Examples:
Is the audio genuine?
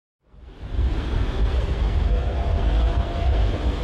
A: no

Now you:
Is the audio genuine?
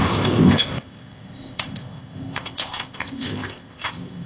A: no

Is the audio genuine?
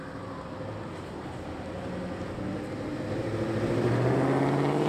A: yes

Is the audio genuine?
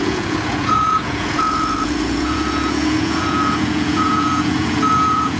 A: no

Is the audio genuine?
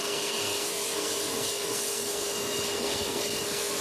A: no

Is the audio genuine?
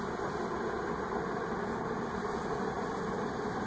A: yes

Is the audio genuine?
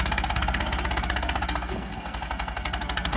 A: no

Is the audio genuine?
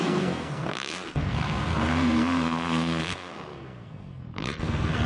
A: no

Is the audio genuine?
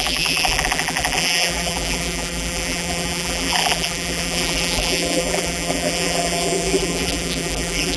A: no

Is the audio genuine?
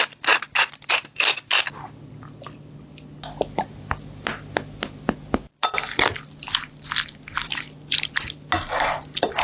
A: yes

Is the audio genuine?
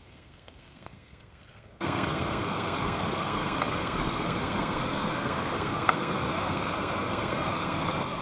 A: no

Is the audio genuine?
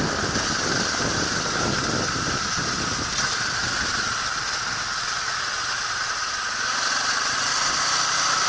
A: yes